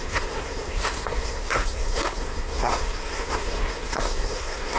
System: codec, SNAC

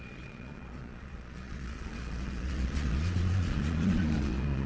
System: vocoder, Vocos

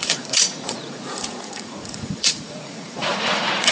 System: vocoder, Vocos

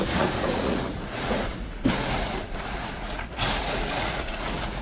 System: vocoder, Vocos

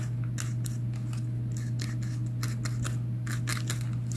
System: none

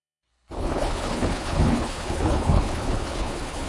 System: codec, HILCodec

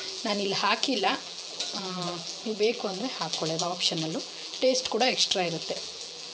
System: vocoder, BigVGAN v2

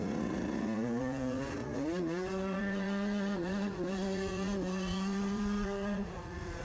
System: vocoder, Vocos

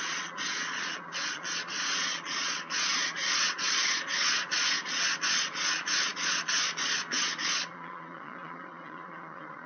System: vocoder, Vocos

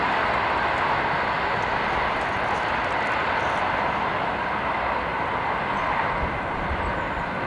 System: none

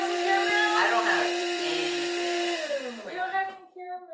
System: vocoder, BigVGAN v2